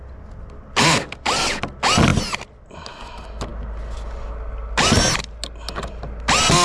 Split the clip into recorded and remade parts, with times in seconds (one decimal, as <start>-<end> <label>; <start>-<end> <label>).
0.0-6.6 recorded